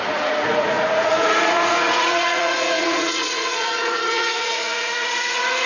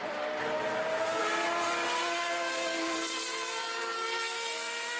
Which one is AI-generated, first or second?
first